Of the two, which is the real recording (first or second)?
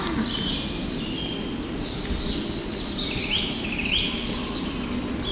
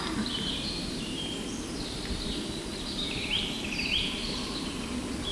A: first